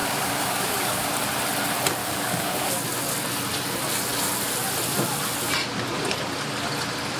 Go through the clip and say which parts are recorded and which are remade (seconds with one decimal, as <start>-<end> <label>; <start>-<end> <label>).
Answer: 0.0-1.1 remade; 1.1-2.0 recorded; 2.0-2.7 remade; 2.7-7.2 recorded